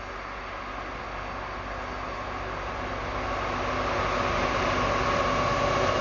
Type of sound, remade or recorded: recorded